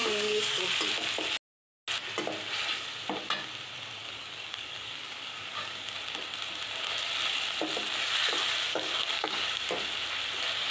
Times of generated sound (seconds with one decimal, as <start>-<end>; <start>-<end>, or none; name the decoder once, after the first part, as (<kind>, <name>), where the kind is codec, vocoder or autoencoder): 0.0-0.6 (codec, DAC); 4.0-5.9; 8.7-9.7